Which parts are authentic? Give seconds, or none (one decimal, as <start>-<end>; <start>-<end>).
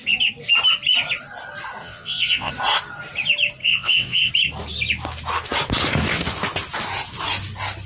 0.0-1.8; 2.5-3.6; 4.3-7.9